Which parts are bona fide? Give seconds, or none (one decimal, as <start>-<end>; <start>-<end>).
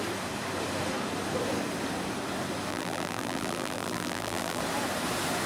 0.0-2.7; 4.6-5.5